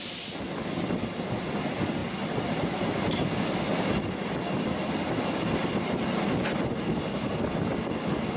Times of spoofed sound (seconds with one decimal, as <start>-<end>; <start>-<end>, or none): 5.6-6.9